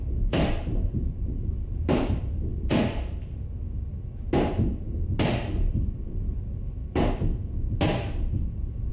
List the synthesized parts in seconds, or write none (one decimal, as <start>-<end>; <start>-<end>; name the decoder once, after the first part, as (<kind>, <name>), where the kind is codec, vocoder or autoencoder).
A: 0.0-2.7 (vocoder, BigVGAN v2); 5.7-6.8